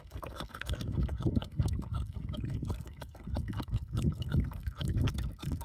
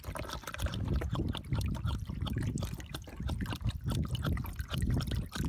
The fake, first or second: first